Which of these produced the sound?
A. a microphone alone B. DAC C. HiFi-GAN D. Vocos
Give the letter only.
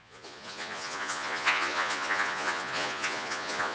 D